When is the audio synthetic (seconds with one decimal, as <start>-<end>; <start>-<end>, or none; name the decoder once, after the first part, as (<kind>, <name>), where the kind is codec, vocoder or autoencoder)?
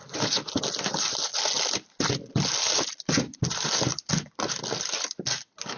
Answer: none